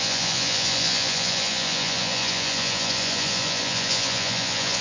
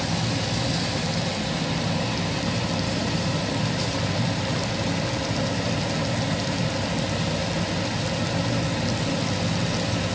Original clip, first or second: second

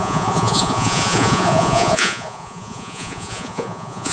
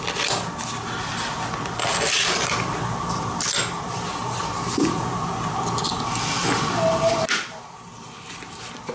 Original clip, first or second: second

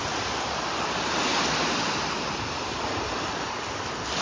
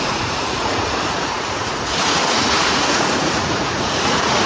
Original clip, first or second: first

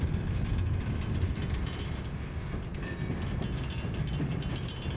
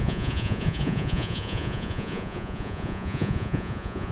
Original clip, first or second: first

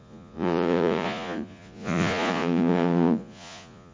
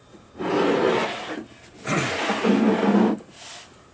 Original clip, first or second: second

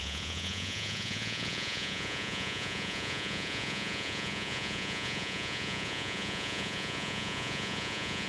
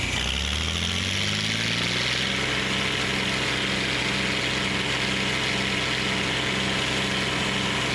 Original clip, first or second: second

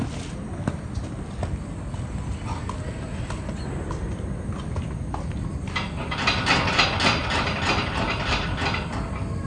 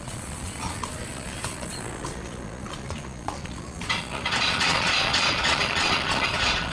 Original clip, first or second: first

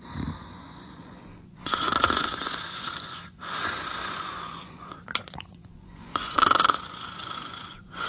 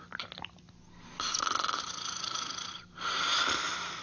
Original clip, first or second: second